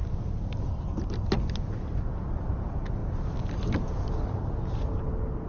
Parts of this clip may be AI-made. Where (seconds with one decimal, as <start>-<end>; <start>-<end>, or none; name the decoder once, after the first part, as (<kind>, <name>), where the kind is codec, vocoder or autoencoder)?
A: none